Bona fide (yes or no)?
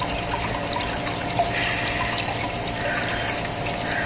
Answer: yes